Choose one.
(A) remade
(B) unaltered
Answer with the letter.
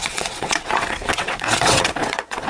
A